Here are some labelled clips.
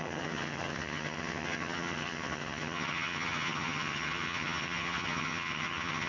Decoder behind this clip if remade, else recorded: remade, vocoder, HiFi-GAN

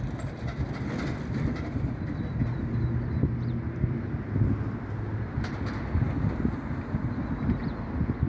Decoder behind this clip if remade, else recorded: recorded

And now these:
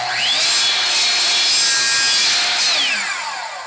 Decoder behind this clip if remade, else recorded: recorded